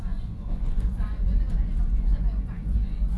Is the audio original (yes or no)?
no